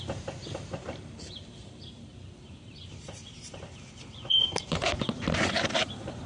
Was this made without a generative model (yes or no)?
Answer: no